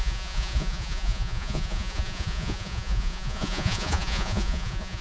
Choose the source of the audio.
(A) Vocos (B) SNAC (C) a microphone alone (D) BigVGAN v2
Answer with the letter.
A